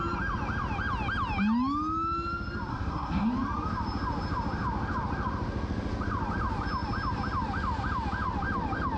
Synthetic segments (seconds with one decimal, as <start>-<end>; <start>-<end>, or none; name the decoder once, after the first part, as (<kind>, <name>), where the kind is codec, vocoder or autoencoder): 2.7-3.3 (codec, SNAC)